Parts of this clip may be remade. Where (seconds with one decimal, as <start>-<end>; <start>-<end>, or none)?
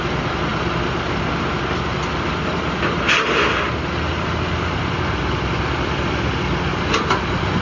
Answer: none